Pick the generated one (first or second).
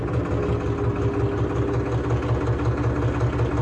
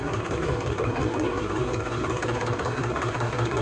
second